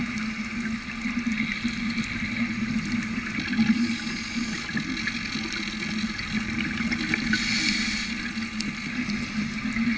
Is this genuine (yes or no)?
yes